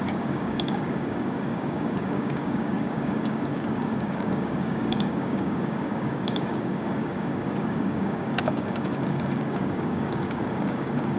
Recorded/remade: remade